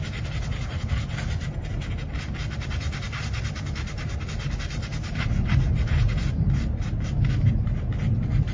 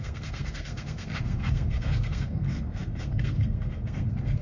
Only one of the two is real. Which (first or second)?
first